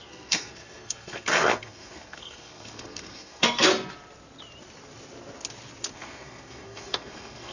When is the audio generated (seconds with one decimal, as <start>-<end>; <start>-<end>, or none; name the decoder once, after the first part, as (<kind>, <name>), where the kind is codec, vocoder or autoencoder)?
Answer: 0.0-3.7 (codec, SNAC); 5.9-7.5